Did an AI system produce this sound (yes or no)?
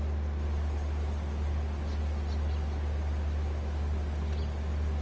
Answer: no